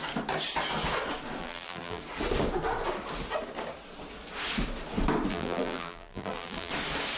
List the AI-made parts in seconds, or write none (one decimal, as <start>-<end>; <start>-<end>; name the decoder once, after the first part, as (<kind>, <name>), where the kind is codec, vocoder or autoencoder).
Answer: 1.4-2.0 (vocoder, BigVGAN v2); 5.3-6.7

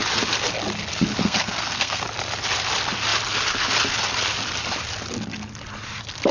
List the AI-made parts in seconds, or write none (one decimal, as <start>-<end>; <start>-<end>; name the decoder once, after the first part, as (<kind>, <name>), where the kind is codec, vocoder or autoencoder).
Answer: 1.2-2.0 (codec, SNAC)

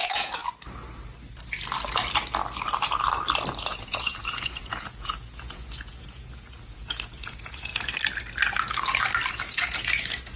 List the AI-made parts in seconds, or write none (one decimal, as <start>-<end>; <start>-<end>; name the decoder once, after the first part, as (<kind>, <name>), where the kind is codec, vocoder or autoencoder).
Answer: 0.0-0.4 (vocoder, Vocos); 3.6-7.7; 9.3-10.4

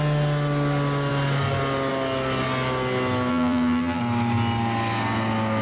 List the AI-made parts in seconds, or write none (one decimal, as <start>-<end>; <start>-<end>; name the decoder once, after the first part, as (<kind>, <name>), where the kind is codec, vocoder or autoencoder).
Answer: 3.3-4.0 (vocoder, BigVGAN v2)

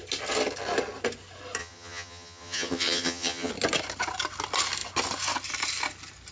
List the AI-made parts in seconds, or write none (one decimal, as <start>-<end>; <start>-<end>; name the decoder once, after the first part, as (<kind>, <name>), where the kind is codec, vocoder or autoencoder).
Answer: 1.6-3.5 (vocoder, HiFi-GAN)

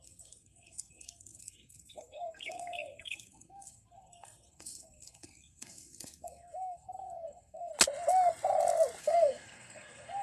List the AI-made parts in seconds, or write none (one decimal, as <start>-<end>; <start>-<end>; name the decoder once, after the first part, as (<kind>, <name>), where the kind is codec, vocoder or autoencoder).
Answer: 0.0-7.7 (codec, SNAC); 9.0-10.2

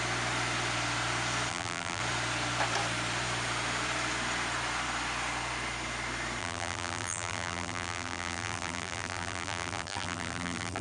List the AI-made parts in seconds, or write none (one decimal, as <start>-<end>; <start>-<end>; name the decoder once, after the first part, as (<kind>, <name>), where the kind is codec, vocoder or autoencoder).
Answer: 1.5-2.0 (vocoder, BigVGAN v2); 6.4-10.8